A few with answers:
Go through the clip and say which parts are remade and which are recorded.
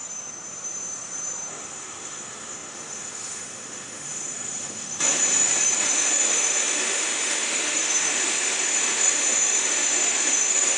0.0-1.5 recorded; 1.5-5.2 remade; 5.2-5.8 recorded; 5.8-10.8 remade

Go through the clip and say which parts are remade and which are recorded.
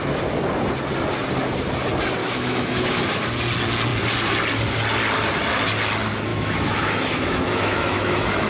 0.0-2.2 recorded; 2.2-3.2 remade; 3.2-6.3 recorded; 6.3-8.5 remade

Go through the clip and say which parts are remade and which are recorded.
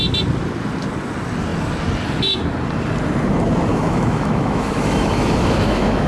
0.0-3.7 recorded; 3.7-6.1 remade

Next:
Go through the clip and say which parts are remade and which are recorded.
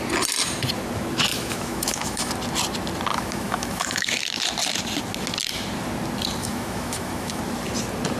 0.0-1.3 recorded; 1.3-2.3 remade; 2.3-3.1 recorded; 3.1-4.2 remade; 4.2-6.4 recorded; 6.4-7.4 remade; 7.4-8.2 recorded